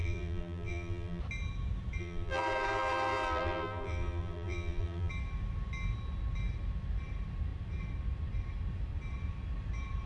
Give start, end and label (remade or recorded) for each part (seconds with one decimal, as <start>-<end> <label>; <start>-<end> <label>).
0.0-1.2 remade; 1.2-2.0 recorded; 2.0-5.1 remade; 5.1-10.1 recorded